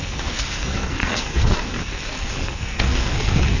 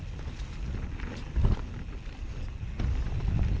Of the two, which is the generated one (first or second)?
first